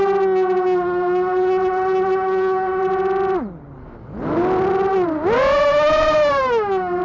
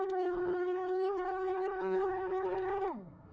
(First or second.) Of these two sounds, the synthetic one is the second